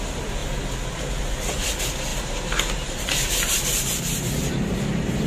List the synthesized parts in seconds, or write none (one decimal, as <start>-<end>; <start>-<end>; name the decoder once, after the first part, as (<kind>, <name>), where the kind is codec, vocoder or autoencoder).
2.1-5.3 (vocoder, BigVGAN v2)